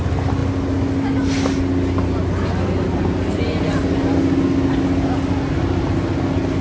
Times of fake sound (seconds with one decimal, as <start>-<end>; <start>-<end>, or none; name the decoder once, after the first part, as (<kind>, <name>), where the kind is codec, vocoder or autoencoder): none